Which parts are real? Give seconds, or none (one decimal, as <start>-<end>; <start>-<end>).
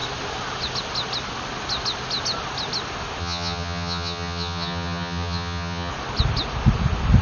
0.0-3.2; 5.9-7.2